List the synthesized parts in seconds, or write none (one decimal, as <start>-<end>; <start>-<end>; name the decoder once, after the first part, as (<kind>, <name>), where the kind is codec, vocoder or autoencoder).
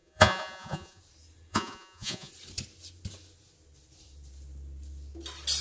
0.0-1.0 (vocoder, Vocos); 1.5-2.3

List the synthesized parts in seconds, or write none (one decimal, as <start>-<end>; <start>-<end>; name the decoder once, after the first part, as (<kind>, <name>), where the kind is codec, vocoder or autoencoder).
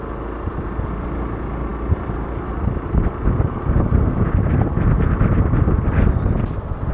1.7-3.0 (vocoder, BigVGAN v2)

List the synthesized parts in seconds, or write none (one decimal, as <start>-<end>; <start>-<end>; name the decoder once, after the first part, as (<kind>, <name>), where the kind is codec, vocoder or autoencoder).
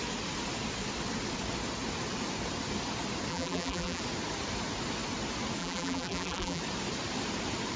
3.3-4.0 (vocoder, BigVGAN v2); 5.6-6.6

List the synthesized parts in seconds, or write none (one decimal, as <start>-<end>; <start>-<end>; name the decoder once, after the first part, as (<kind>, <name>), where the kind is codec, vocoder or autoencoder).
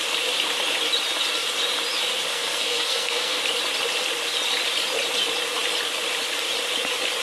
2.3-3.4 (codec, SNAC)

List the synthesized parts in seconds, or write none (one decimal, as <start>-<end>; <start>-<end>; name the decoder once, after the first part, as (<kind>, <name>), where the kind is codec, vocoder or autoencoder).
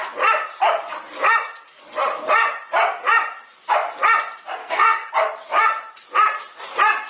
4.6-5.1 (codec, SNAC)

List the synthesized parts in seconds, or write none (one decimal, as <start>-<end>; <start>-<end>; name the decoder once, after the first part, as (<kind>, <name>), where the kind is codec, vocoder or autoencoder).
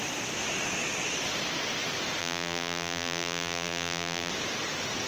2.2-4.3 (vocoder, BigVGAN v2)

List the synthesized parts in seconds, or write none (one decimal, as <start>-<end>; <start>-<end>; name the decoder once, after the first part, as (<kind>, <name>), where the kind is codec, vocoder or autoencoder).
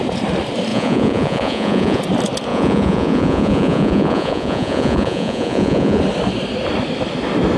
0.7-2.0 (vocoder, Vocos); 2.5-6.0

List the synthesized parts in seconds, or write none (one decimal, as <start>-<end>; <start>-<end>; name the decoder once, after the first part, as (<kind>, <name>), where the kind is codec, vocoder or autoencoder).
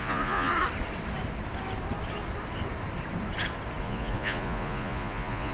0.0-0.5 (vocoder, Vocos); 3.8-5.5